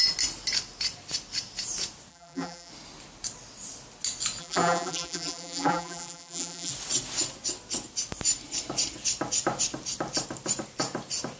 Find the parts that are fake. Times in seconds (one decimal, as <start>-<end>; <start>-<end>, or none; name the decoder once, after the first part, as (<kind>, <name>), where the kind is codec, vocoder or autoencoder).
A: 2.1-2.7 (vocoder, BigVGAN v2); 4.4-6.7